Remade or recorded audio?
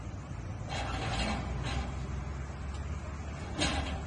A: recorded